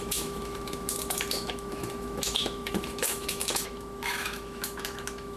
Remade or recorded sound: remade